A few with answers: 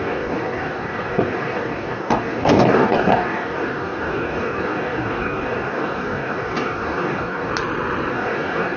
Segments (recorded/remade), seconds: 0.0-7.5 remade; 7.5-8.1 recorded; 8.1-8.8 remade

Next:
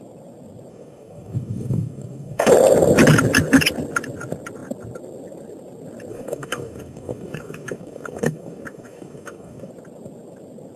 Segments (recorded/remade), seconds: 0.0-0.7 recorded; 0.7-2.5 remade; 2.5-6.1 recorded; 6.1-9.7 remade; 9.7-10.8 recorded

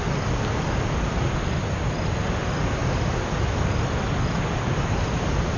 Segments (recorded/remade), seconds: 0.0-5.6 recorded

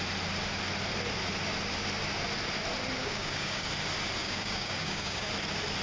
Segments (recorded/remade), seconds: 0.0-3.0 recorded; 3.0-3.7 remade; 3.7-4.2 recorded; 4.2-5.3 remade; 5.3-5.8 recorded

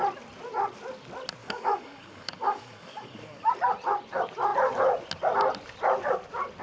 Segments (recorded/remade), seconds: 0.0-1.4 recorded; 1.4-3.5 remade; 3.5-6.6 recorded

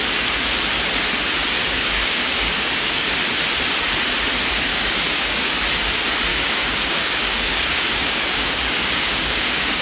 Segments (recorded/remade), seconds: 0.0-1.6 recorded; 1.6-3.1 remade; 3.1-4.7 recorded; 4.7-5.5 remade; 5.5-6.3 recorded; 6.3-9.8 remade

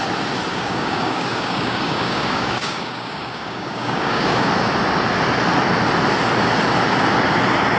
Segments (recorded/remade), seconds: 0.0-0.5 recorded; 0.5-4.5 remade; 4.5-7.8 recorded